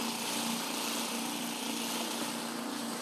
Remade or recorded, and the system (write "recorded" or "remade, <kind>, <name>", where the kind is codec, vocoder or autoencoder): recorded